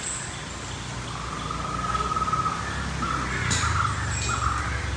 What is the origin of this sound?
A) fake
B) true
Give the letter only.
B